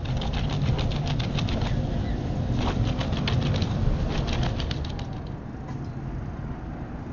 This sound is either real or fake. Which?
real